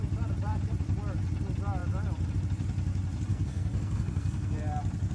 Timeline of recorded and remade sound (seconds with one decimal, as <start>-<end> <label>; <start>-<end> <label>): 0.0-3.3 recorded; 3.3-4.6 remade; 4.6-5.1 recorded